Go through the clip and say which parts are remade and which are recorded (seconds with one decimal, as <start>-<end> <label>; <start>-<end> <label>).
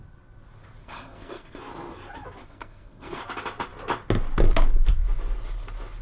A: 0.0-0.8 recorded; 0.8-1.6 remade; 1.6-2.4 recorded; 2.4-3.2 remade; 3.2-6.0 recorded